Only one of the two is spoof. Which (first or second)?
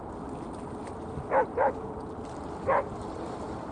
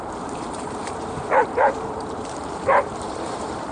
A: second